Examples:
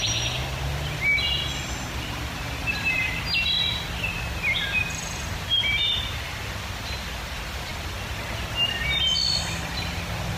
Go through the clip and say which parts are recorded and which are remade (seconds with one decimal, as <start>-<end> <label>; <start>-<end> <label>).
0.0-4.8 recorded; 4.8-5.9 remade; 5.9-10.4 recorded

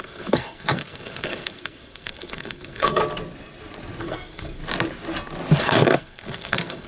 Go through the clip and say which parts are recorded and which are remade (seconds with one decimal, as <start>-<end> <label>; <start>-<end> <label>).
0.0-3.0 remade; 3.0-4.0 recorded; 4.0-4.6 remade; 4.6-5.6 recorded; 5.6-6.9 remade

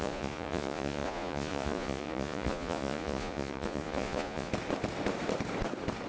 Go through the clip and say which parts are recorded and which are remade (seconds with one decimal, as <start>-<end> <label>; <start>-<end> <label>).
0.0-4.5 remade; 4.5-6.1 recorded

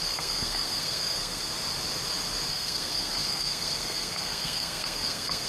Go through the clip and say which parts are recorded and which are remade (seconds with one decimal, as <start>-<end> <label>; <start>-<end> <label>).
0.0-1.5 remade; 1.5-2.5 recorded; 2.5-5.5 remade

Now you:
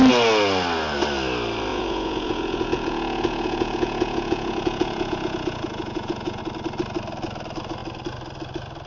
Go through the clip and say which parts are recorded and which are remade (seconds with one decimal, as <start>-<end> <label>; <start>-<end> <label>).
0.0-1.7 recorded; 1.7-6.4 remade; 6.4-8.9 recorded